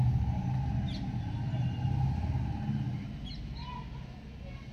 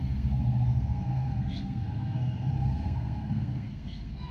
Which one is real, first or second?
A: first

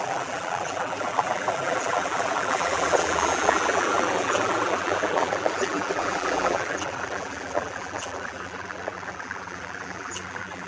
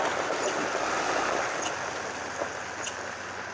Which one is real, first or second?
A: second